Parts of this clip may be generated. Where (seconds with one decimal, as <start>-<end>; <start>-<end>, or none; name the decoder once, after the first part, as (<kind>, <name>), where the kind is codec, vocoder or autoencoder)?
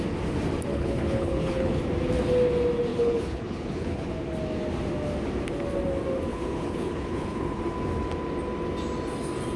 0.7-1.8 (codec, HILCodec); 2.9-4.1; 6.3-7.6